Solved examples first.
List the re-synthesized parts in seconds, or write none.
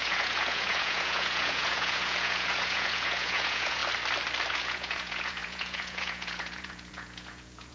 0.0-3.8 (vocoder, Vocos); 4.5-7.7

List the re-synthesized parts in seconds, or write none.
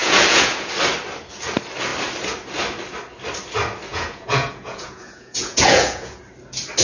0.0-0.7 (vocoder, Vocos); 3.9-6.2